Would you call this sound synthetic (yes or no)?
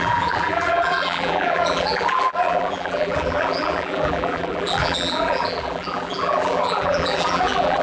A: yes